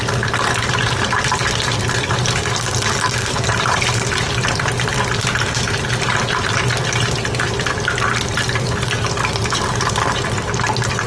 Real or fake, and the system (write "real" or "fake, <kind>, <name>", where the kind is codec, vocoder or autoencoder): real